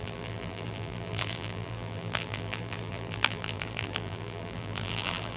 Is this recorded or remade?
remade